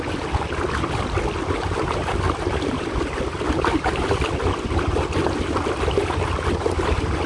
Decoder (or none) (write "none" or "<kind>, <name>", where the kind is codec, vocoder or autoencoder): none